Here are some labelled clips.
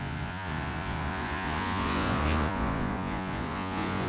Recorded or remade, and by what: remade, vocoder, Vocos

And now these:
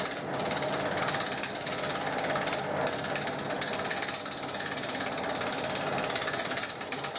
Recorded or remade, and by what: recorded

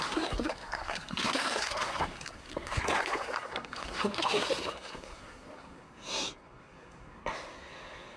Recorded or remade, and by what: remade, codec, SNAC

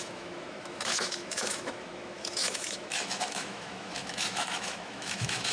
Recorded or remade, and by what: remade, autoencoder, DAC-VAE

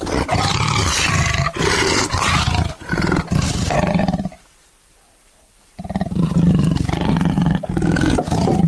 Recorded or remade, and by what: remade, vocoder, BigVGAN v2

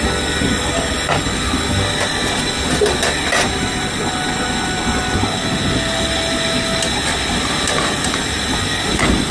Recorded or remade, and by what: recorded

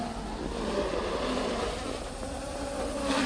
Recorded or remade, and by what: recorded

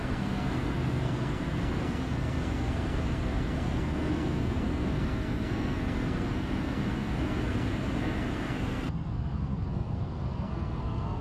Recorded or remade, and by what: remade, codec, SNAC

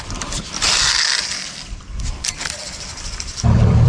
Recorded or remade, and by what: remade, vocoder, BigVGAN v2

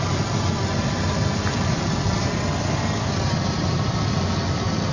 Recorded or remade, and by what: recorded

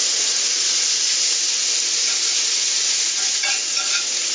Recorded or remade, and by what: remade, vocoder, Vocos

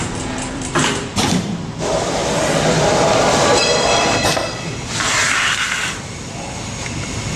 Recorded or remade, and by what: remade, vocoder, BigVGAN v2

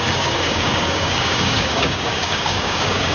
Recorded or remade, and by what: remade, codec, DAC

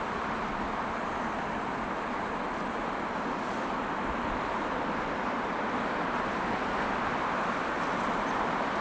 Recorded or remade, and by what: recorded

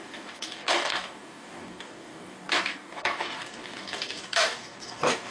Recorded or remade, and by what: remade, codec, DAC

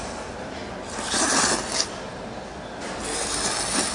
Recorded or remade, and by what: recorded